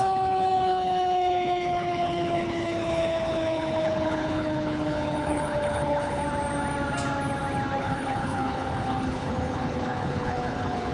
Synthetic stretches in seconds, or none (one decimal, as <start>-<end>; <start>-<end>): 0.0-6.2; 7.8-10.9